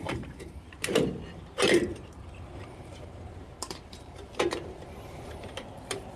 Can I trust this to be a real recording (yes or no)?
no